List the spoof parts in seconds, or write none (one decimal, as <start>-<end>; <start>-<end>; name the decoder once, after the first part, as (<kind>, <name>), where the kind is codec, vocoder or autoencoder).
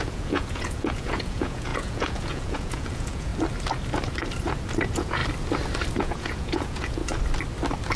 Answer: 0.0-3.3 (vocoder, Vocos); 4.8-5.2; 6.0-7.0